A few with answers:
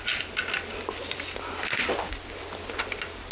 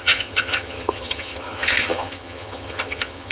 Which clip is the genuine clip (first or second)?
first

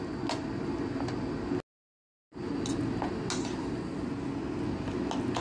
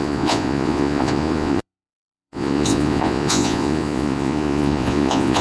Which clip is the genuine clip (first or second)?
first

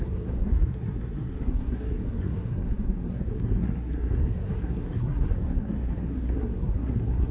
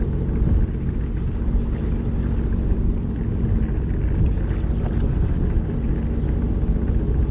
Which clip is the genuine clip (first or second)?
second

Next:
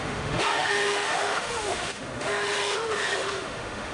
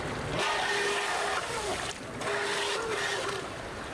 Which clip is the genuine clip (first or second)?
second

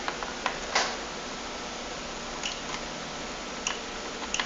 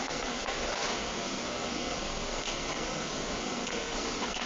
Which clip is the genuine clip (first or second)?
first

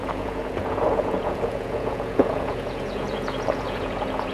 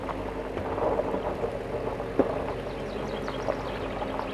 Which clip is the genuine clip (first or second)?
second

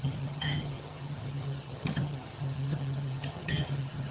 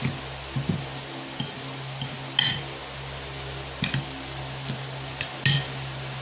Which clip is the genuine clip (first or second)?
second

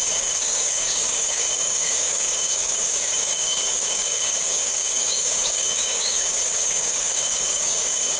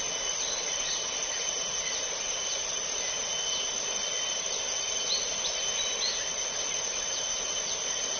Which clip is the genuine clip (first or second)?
second